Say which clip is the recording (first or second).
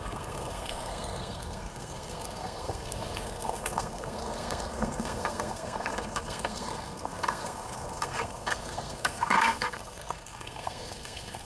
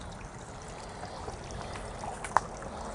second